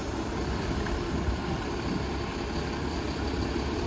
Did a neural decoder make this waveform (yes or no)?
yes